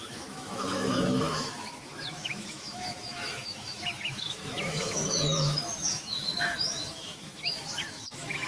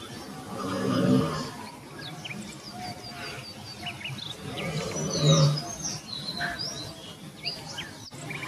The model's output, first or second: first